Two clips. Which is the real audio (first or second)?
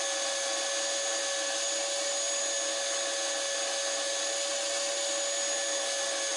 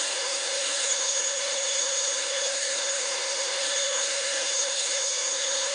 first